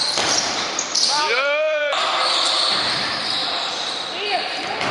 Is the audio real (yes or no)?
no